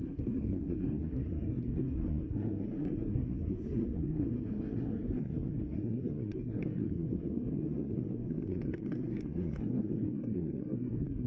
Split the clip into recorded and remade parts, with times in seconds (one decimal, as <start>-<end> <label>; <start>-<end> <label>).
0.0-11.3 remade